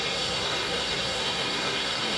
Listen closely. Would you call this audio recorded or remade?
remade